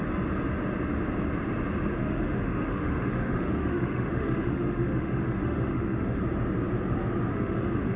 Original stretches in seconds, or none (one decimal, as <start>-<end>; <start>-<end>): 0.0-2.0; 6.2-7.3

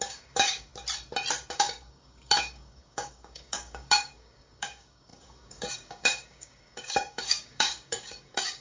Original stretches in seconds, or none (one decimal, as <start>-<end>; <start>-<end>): 0.7-1.5

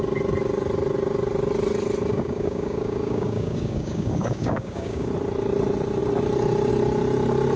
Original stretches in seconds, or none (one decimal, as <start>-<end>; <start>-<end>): 0.0-2.1; 5.1-7.6

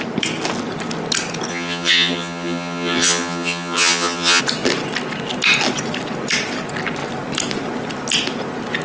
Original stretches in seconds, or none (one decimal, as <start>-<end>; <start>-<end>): 0.0-1.5; 4.4-8.8

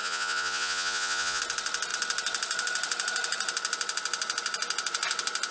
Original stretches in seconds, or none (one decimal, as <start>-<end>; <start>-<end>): 1.4-5.5

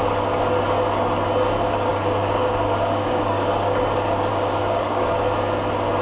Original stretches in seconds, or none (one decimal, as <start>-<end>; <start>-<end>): 0.0-1.9; 3.8-4.3; 5.1-6.0

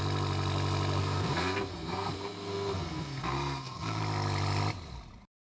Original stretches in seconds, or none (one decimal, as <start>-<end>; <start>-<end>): 0.0-1.0; 4.0-5.5

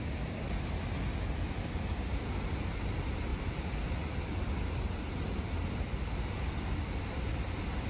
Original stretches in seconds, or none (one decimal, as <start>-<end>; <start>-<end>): 0.0-7.9